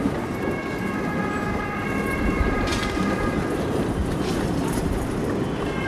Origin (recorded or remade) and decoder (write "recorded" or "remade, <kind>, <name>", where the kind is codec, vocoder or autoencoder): recorded